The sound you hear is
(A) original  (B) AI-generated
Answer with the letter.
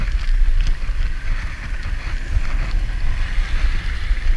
A